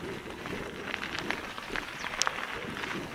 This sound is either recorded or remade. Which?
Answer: recorded